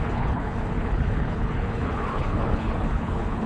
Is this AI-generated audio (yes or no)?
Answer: yes